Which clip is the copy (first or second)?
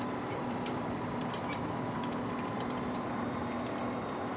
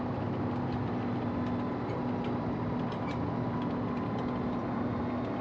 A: first